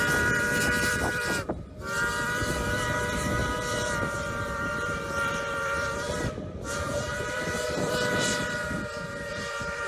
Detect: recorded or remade remade